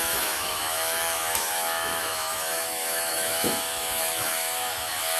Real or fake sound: fake